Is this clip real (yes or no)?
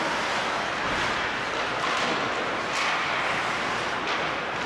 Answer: yes